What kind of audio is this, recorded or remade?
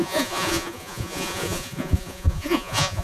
remade